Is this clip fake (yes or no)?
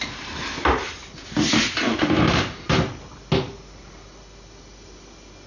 no